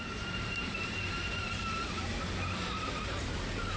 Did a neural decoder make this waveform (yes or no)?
yes